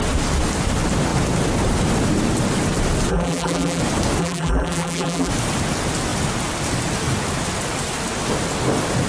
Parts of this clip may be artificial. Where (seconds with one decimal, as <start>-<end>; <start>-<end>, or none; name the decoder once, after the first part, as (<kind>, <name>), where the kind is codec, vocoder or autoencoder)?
3.1-3.8 (vocoder, BigVGAN v2); 4.2-5.3

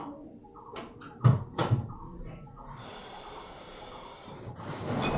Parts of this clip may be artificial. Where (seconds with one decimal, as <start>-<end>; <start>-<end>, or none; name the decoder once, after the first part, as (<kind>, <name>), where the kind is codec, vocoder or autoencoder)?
0.0-5.2 (vocoder, BigVGAN v2)